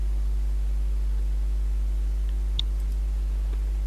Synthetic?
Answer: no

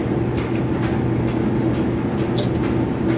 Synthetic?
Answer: no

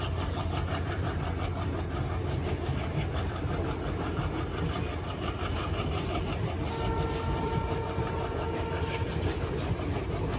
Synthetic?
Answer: no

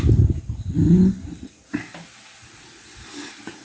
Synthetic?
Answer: no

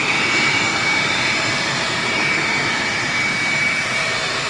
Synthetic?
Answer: yes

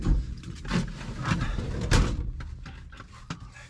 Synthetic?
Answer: no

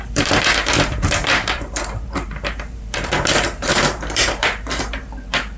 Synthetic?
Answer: yes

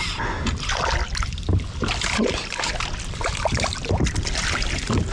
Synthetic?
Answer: no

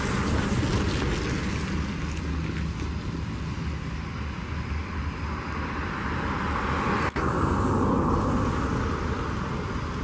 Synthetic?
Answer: no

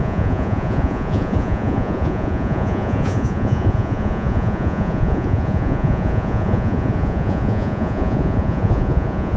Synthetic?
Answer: yes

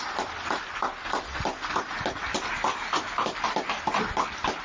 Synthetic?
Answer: no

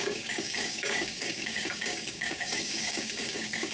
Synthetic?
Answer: yes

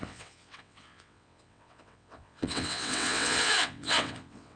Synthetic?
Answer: yes